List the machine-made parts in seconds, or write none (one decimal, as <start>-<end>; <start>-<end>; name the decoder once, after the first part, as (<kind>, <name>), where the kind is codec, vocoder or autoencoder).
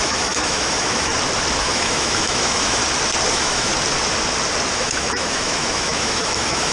0.0-1.1 (autoencoder, DAC-VAE); 1.6-2.8; 3.3-3.7; 4.7-6.7